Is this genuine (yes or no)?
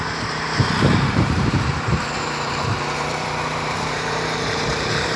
no